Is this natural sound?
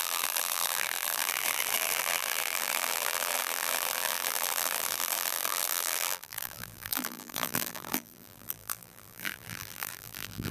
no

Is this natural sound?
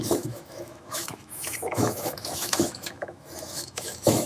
no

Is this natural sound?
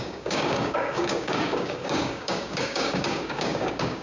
no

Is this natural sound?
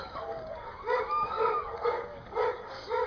no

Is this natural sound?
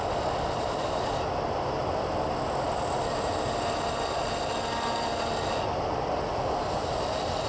yes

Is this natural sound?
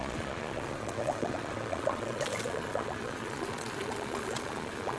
no